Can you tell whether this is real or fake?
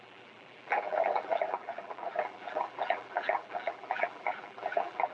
fake